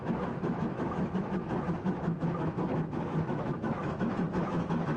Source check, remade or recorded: remade